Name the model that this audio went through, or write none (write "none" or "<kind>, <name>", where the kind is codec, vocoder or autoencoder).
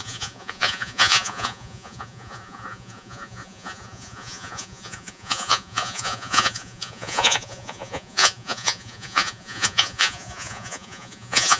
vocoder, Vocos